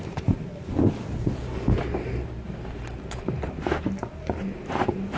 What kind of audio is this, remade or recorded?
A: remade